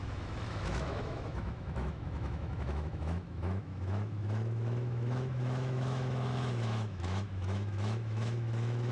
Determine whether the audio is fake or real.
fake